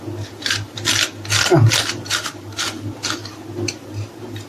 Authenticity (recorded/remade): recorded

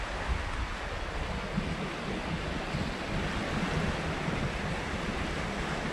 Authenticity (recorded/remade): recorded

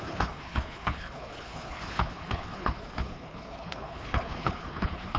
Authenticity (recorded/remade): remade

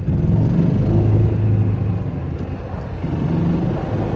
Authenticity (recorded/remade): recorded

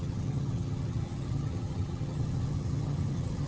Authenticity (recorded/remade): remade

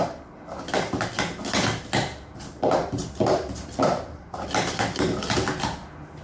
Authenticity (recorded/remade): recorded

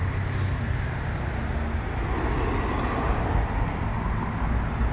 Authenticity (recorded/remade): recorded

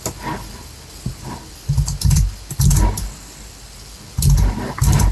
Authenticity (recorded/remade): recorded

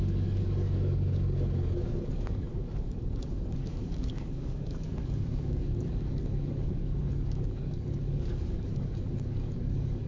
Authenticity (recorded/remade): remade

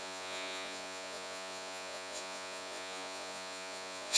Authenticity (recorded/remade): remade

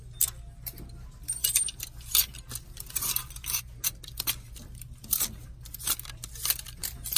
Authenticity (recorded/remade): recorded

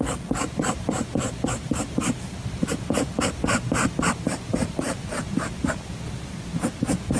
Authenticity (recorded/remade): remade